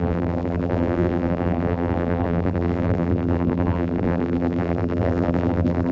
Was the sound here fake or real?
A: fake